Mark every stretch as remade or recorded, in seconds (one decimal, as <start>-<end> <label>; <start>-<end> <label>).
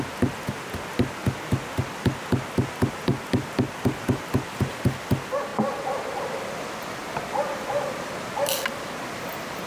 0.0-9.7 recorded